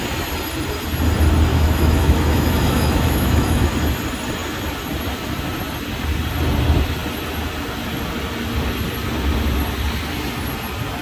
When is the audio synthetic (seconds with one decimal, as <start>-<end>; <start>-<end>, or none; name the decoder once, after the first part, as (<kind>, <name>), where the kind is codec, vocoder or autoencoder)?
1.5-3.7 (autoencoder, DAC-VAE)